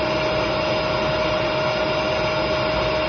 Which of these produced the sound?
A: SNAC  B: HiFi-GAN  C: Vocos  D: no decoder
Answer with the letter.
D